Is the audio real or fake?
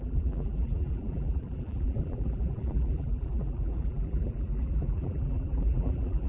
fake